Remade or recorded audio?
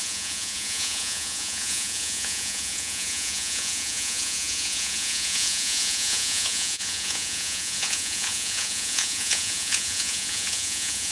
remade